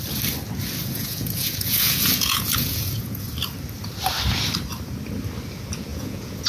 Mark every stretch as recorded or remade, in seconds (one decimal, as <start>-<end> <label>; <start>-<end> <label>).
0.0-0.8 recorded; 0.8-3.3 remade; 3.3-5.9 recorded; 5.9-6.5 remade